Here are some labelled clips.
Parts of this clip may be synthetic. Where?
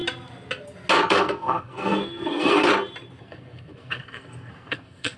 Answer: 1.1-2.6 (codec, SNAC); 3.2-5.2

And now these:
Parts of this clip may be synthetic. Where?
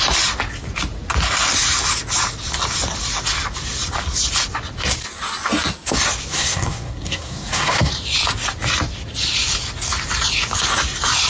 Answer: 6.3-7.9 (codec, SNAC)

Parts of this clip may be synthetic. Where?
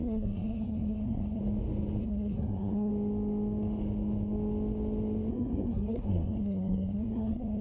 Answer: 0.0-1.4 (codec, SNAC); 2.0-2.9; 5.3-7.6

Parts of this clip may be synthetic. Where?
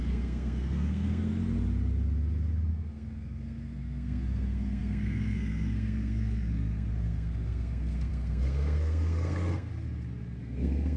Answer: 0.0-1.3 (codec, SNAC); 2.7-9.7; 10.4-11.0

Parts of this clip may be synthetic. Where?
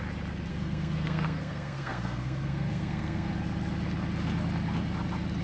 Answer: 0.5-3.3 (codec, SNAC)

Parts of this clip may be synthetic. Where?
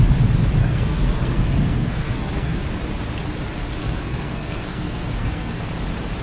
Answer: 0.6-2.6 (codec, SNAC); 3.8-5.7